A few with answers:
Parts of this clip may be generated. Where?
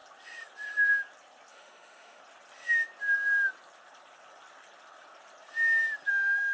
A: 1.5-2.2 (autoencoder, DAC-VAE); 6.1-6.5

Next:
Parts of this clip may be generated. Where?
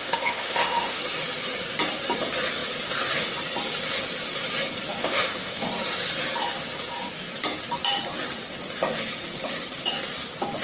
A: 0.0-1.0 (autoencoder, DAC-VAE); 5.0-5.7